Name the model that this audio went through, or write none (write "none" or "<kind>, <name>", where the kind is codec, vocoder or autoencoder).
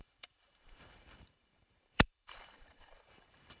vocoder, BigVGAN v2